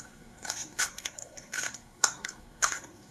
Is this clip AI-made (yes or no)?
yes